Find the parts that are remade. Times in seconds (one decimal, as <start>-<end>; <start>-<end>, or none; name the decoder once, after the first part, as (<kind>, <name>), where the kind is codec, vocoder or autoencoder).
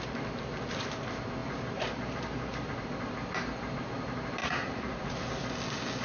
4.4-5.3 (vocoder, Vocos)